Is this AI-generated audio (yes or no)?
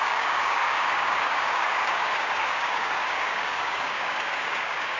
yes